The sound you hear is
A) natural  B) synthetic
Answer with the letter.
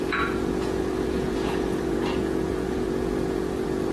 B